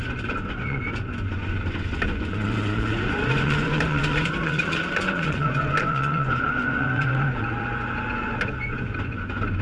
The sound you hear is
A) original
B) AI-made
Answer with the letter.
B